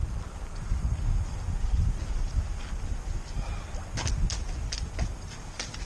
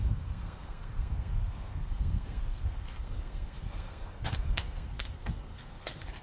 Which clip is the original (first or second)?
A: first